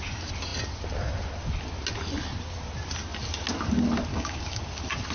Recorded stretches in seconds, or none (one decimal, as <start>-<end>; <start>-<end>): 0.0-4.1; 4.6-5.1